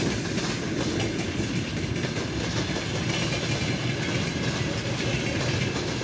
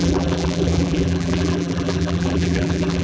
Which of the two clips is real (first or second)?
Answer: first